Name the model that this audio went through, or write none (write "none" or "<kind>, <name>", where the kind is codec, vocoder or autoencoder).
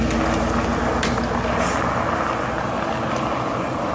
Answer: none